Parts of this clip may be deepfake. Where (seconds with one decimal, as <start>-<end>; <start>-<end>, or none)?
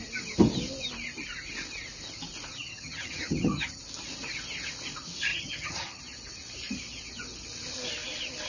2.5-3.8; 5.3-6.0